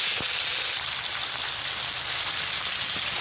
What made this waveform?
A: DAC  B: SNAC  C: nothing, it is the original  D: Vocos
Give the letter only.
C